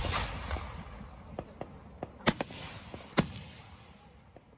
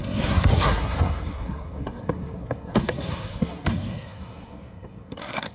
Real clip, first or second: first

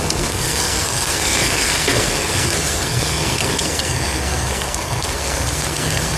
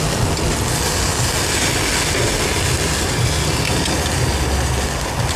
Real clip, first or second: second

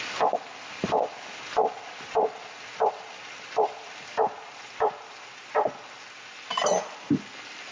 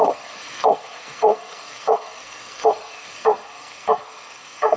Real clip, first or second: first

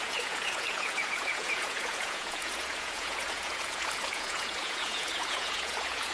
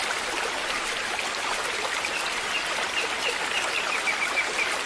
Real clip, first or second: second